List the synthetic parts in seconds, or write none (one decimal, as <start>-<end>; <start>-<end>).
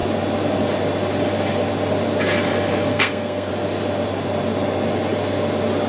2.9-3.5